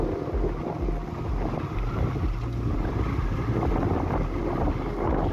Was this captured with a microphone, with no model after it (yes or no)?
yes